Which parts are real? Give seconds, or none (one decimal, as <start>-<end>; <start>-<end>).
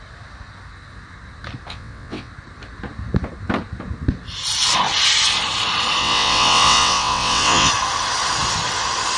0.0-1.7; 2.3-6.0; 7.7-9.2